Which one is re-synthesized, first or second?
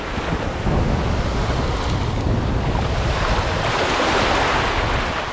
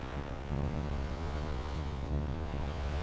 second